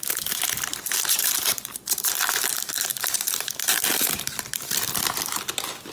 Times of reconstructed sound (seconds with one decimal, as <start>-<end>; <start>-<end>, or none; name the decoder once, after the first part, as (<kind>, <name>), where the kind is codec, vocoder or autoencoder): 0.7-4.2 (vocoder, BigVGAN v2)